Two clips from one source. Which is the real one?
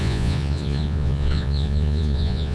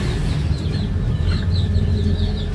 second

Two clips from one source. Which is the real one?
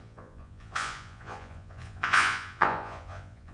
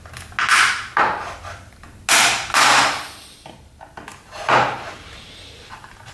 second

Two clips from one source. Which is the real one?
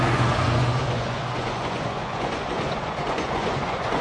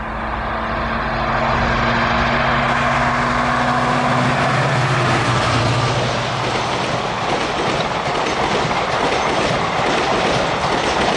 second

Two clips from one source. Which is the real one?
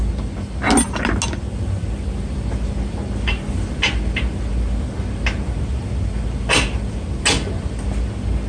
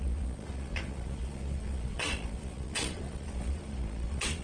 first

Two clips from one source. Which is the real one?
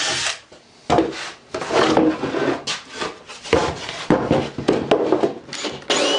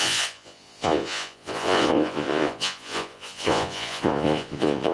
first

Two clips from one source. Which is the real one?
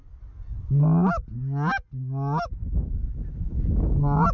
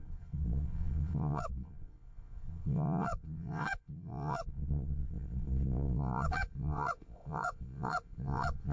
first